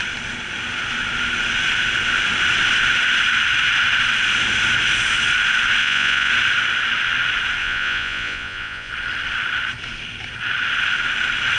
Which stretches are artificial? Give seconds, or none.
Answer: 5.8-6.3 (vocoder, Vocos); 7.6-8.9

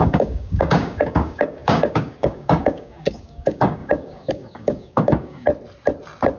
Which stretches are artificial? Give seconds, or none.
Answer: 0.0-5.5 (codec, DAC)

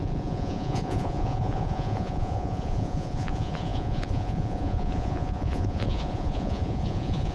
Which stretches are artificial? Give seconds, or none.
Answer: 0.0-7.3 (vocoder, Vocos)

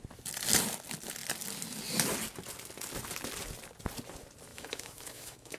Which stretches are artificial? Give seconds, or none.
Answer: 4.5-5.6 (autoencoder, DAC-VAE)

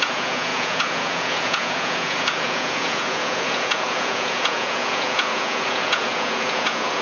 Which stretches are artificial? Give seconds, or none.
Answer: 0.0-7.0 (vocoder, Vocos)

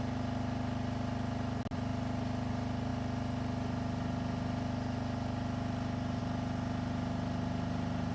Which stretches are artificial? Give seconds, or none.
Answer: none

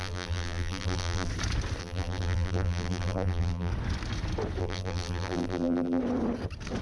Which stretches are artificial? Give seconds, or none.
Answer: 0.0-1.3 (vocoder, BigVGAN v2); 1.8-3.7; 4.6-6.0